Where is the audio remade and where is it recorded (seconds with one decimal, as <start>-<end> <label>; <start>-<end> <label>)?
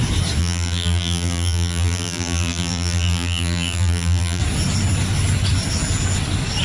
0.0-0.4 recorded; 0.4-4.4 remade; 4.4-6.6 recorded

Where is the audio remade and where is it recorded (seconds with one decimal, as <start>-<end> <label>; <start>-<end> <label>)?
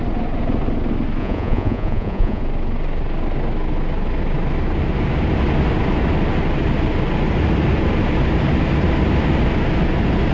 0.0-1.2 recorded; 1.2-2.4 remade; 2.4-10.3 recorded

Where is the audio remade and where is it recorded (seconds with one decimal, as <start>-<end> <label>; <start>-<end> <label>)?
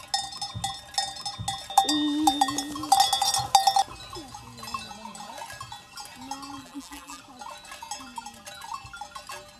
0.0-6.6 recorded; 6.6-7.2 remade; 7.2-9.6 recorded